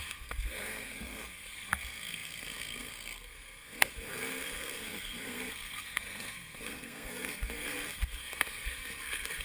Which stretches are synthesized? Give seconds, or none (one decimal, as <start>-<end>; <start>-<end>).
0.0-9.4